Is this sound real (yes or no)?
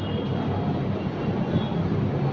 yes